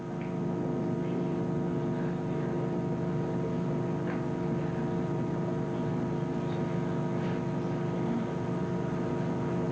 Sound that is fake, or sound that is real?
real